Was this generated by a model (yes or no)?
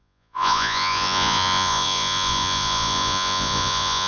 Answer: yes